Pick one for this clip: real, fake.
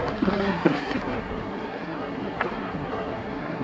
fake